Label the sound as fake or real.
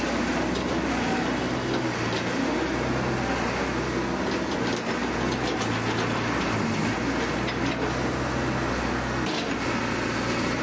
real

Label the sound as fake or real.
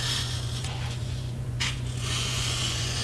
fake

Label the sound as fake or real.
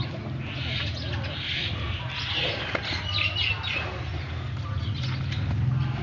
real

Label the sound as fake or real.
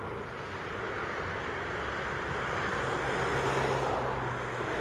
real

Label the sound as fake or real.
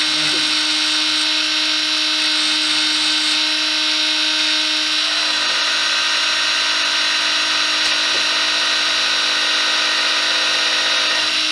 real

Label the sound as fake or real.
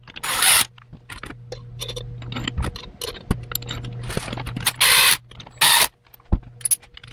real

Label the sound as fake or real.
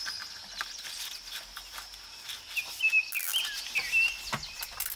real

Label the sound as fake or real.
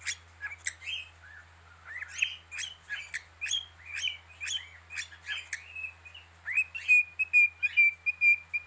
real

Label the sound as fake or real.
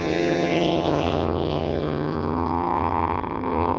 fake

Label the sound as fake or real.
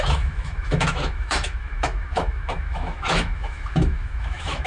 fake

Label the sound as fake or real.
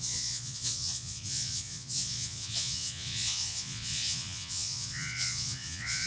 fake